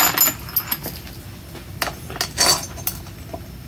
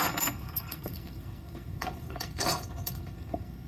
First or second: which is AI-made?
second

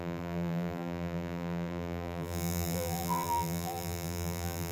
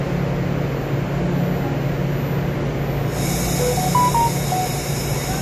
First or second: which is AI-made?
first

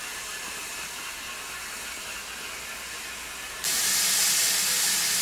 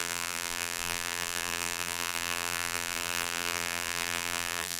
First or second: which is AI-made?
second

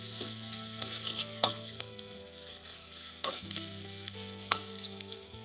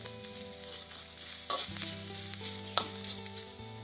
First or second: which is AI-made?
first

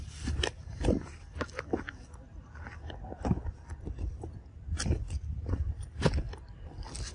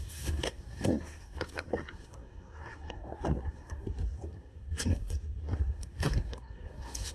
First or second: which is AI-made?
second